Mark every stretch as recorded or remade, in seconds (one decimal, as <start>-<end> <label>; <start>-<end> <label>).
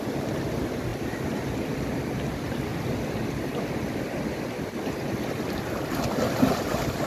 0.0-7.1 recorded